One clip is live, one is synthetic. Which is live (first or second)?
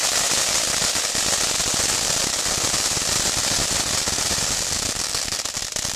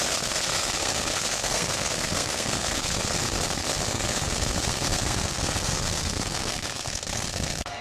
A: first